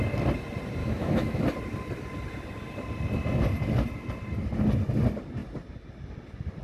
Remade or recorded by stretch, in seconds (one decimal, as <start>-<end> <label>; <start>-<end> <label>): 0.0-0.8 recorded; 0.8-1.4 remade; 1.4-6.6 recorded